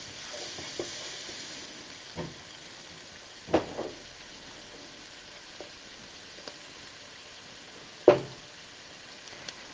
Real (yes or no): yes